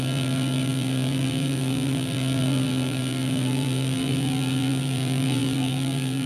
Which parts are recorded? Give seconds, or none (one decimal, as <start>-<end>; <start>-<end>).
none